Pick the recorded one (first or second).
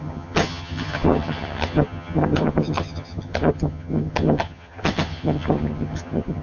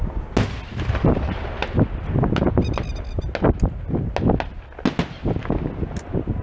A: second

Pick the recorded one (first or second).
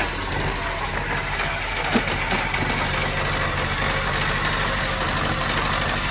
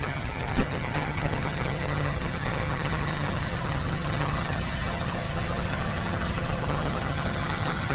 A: first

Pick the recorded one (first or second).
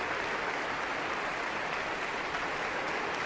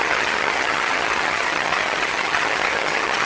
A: first